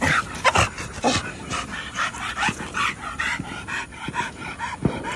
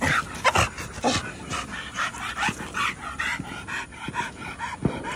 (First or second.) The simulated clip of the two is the first